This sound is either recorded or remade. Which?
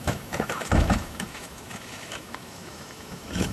remade